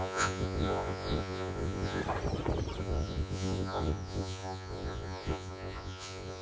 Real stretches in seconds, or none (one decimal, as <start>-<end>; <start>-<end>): 2.0-2.8